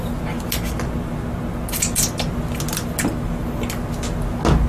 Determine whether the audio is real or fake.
real